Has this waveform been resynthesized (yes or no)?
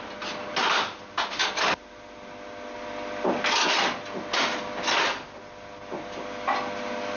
no